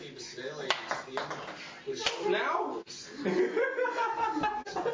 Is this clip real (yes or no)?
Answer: yes